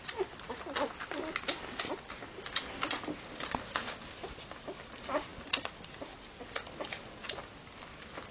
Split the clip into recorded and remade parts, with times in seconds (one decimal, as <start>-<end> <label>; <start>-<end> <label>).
0.0-8.3 recorded